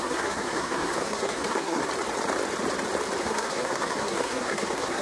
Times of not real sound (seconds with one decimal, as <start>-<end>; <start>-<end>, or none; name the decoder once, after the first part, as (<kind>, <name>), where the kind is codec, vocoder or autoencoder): 0.0-1.8 (codec, SNAC); 3.2-5.0